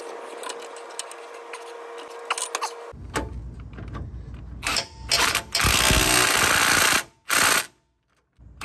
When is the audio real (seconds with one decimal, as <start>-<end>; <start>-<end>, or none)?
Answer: 0.0-8.6